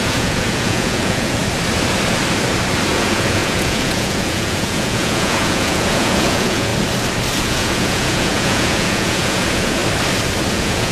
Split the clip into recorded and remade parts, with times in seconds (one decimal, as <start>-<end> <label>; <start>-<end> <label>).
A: 0.0-1.4 remade; 1.4-2.9 recorded; 2.9-6.7 remade; 6.7-7.4 recorded; 7.4-9.8 remade; 9.8-10.5 recorded; 10.5-10.9 remade